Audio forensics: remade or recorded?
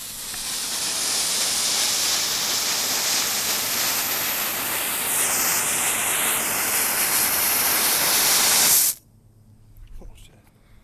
recorded